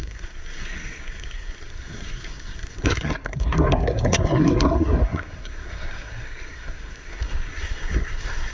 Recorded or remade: remade